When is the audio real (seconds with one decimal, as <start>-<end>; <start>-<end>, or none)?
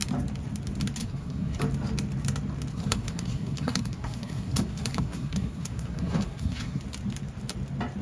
0.0-1.0; 1.6-2.7; 6.8-8.0